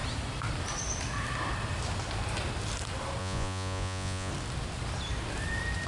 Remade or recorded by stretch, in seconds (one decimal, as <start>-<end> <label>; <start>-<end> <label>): 0.0-3.2 recorded; 3.2-4.3 remade; 4.3-5.9 recorded